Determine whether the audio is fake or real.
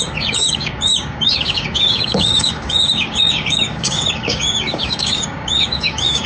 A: fake